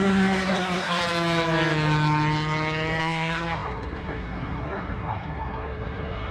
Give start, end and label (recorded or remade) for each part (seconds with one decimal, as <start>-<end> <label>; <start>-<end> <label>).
0.0-1.0 remade; 1.0-3.0 recorded; 3.0-6.3 remade